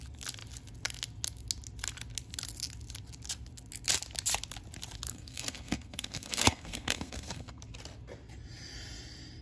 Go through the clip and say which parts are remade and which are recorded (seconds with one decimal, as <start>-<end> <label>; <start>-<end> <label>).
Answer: 0.0-5.1 recorded; 5.1-7.6 remade; 7.6-9.4 recorded